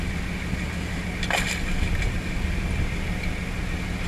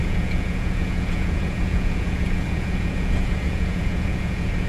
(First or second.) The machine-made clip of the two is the second